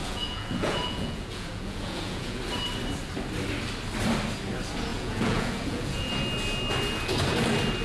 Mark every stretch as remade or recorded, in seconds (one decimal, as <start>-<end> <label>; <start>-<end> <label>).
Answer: 0.0-2.4 remade; 2.4-4.9 recorded; 4.9-6.1 remade; 6.1-7.8 recorded